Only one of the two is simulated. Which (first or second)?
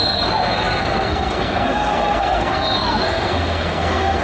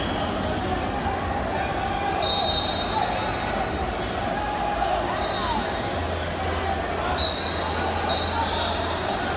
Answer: first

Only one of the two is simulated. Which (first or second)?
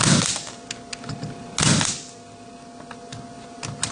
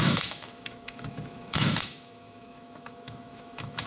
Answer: second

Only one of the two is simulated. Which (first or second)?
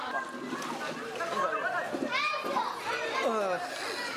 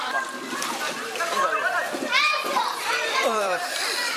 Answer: second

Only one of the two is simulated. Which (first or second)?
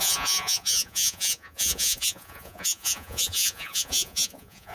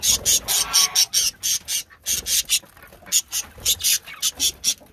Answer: first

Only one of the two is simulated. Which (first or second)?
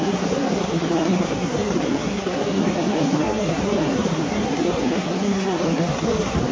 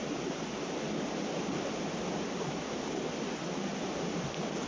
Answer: first